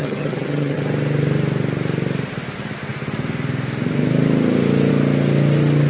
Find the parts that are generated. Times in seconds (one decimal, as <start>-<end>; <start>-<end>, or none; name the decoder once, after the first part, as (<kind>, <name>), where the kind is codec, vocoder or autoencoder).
0.0-0.8 (vocoder, HiFi-GAN)